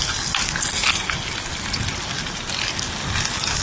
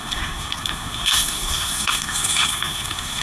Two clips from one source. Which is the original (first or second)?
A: first